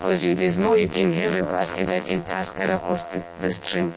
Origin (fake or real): fake